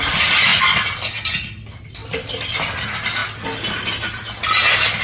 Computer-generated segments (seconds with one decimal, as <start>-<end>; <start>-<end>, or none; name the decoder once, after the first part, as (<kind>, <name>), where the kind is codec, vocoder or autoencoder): 0.5-1.2 (vocoder, BigVGAN v2)